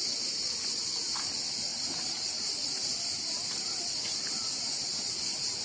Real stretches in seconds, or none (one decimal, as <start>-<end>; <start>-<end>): 0.0-1.7; 5.1-5.6